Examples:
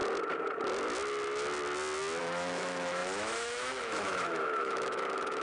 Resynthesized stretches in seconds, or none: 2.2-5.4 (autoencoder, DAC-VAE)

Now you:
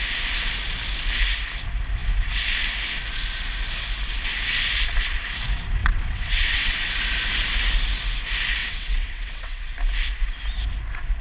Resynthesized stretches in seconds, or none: 5.8-7.0 (vocoder, WaveNeXt); 8.6-9.6

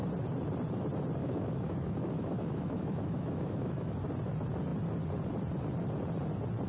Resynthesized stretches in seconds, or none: 1.2-3.9 (autoencoder, DAC-VAE)

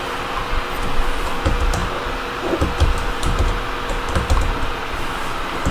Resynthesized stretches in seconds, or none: 0.4-1.3 (vocoder, BigVGAN v2)

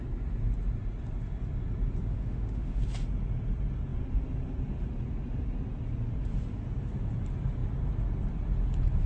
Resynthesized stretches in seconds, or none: 2.1-2.8 (autoencoder, DAC-VAE)

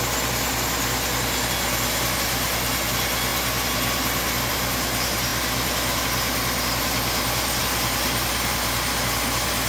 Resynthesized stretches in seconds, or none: none